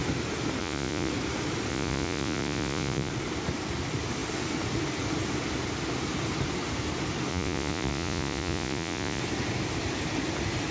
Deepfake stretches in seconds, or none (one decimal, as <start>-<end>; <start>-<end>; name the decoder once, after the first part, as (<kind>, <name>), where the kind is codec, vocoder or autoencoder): 0.6-1.1 (vocoder, Vocos); 1.7-3.1; 7.3-9.2

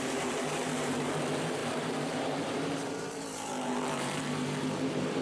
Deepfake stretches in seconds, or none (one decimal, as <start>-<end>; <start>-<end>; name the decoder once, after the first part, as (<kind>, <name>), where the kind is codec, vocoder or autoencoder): 0.0-5.2 (vocoder, BigVGAN v2)

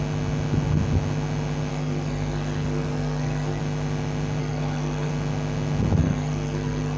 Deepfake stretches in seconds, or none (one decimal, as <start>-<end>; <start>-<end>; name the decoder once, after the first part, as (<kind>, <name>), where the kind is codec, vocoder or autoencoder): 1.7-3.6 (codec, SNAC); 4.4-5.1; 6.0-7.0

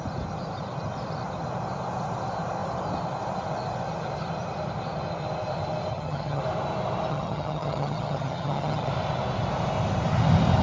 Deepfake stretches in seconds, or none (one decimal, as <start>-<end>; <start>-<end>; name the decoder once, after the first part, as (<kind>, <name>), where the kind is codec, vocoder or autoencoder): 5.9-6.4 (vocoder, HiFi-GAN); 7.1-8.9

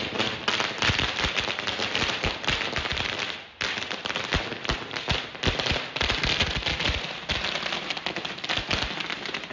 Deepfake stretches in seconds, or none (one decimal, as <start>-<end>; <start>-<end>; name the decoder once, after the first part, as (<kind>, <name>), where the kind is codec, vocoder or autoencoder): none

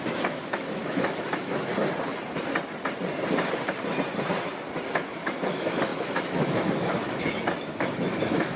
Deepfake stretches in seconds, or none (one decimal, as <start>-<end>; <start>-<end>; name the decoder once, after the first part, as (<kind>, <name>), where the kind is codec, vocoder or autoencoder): 0.0-1.7 (autoencoder, DAC-VAE); 4.9-8.6

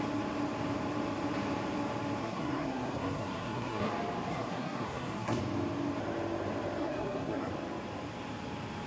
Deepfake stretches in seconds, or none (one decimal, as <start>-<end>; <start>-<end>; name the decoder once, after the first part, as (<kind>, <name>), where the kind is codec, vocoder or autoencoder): 2.2-3.9 (codec, SNAC); 4.3-5.4; 6.8-7.5

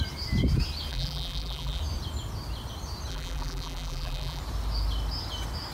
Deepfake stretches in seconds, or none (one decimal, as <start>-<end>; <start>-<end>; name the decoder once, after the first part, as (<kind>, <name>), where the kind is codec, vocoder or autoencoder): 0.9-1.8 (vocoder, BigVGAN v2); 3.1-4.4